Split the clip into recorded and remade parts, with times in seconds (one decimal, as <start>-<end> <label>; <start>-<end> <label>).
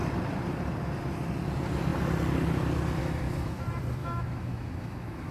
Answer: 0.0-3.0 recorded; 3.0-3.6 remade; 3.6-4.0 recorded; 4.0-5.3 remade